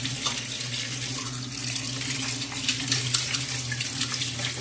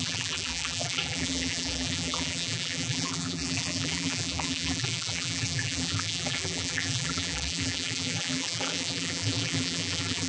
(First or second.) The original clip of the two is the first